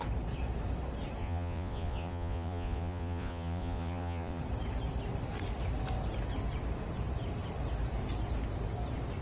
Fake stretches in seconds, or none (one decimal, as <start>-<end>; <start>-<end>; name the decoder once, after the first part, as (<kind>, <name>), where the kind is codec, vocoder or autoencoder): 1.2-4.4 (vocoder, Vocos)